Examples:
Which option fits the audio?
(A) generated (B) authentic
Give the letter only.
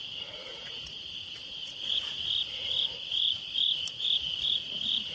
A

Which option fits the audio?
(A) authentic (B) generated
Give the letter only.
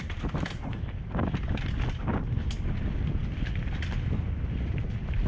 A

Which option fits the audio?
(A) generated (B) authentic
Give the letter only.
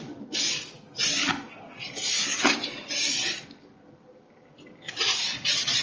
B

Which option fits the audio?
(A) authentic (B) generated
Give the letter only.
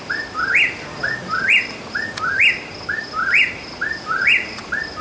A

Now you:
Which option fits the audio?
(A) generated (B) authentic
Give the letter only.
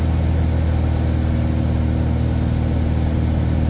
B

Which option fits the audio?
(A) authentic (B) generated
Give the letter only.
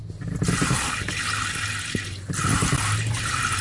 A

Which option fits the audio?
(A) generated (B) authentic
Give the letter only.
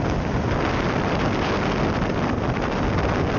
B